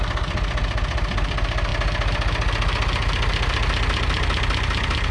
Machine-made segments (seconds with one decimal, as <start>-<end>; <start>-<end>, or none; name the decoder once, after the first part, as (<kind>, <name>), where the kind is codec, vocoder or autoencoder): none